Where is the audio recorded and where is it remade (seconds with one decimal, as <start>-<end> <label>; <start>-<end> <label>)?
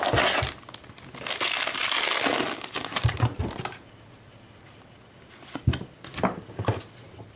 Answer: 0.0-7.4 recorded